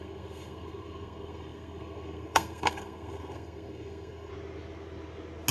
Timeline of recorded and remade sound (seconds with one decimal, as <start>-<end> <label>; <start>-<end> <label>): 0.0-4.3 remade; 4.3-5.5 recorded